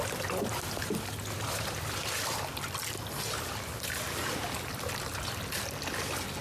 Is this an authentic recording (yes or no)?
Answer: yes